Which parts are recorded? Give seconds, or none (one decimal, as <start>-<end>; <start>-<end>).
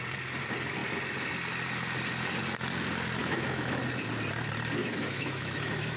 0.0-3.2; 3.8-4.8